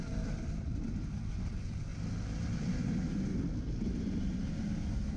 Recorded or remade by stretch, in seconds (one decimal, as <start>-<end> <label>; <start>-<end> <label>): 0.0-1.9 remade; 1.9-2.6 recorded; 2.6-3.3 remade; 3.3-3.9 recorded; 3.9-5.2 remade